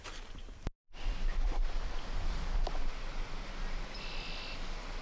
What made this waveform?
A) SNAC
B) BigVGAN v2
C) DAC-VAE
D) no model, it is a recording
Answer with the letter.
D